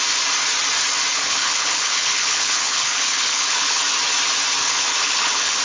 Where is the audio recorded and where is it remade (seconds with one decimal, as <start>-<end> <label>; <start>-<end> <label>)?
0.0-1.1 recorded; 1.1-3.8 remade; 3.8-4.6 recorded; 4.6-5.6 remade